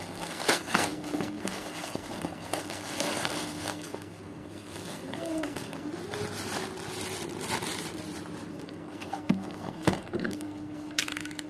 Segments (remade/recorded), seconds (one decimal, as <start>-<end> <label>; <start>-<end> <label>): 0.0-5.9 remade; 5.9-8.5 recorded; 8.5-11.5 remade